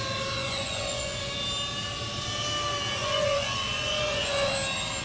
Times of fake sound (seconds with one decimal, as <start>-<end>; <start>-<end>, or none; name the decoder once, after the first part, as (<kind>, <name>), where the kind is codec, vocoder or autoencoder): 0.4-1.3 (vocoder, Vocos); 3.0-4.5